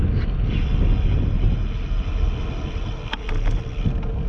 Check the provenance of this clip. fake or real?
real